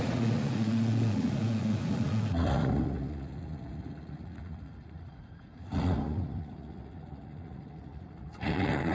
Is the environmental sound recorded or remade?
remade